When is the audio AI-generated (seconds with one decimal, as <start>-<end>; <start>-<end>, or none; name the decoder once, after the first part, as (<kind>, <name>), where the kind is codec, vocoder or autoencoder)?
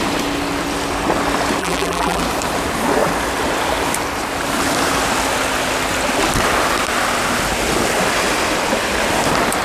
1.6-2.2 (vocoder, BigVGAN v2)